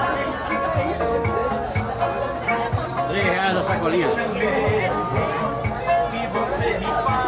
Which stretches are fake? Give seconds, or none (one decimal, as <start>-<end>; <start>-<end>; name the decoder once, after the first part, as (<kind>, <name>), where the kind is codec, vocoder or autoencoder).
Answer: none